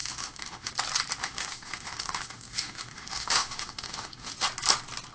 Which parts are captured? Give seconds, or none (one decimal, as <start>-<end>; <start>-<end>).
0.7-1.2; 4.3-5.1